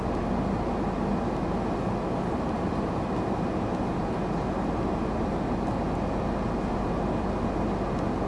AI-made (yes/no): no